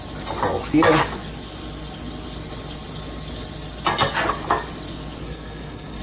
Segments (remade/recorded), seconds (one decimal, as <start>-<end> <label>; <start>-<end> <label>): 0.0-5.2 recorded; 5.2-6.0 remade